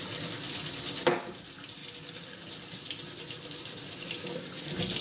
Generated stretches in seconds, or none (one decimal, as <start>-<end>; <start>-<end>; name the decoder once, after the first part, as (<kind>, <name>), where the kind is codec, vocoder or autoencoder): none